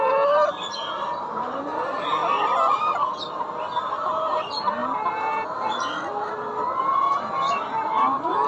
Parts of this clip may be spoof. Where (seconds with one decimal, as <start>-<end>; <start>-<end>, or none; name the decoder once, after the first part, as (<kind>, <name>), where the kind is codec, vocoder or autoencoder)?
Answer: 4.8-8.5 (vocoder, BigVGAN v2)